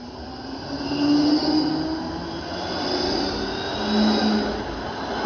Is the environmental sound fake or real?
real